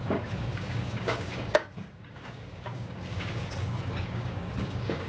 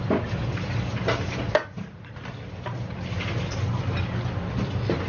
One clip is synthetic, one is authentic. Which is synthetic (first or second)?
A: first